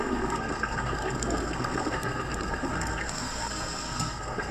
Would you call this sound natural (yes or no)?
no